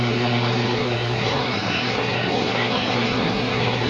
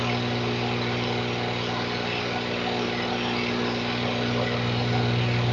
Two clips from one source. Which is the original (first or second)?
second